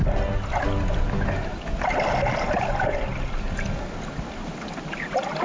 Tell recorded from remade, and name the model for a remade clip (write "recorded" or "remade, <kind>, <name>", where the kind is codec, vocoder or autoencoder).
recorded